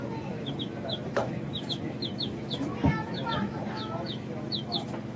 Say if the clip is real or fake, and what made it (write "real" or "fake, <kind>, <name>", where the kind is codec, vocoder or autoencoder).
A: fake, autoencoder, DAC-VAE